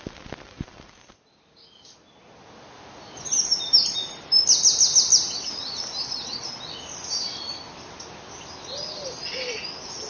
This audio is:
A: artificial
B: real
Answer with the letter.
B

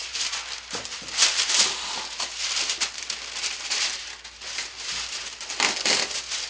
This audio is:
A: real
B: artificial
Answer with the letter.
A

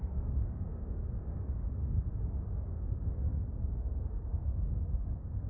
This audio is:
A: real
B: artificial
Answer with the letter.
B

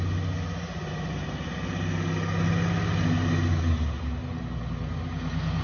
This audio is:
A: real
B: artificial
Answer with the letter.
A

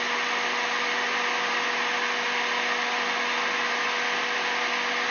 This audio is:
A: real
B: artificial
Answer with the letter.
A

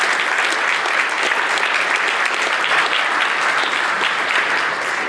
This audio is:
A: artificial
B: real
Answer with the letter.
B